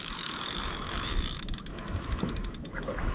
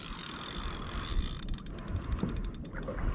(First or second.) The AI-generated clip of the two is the first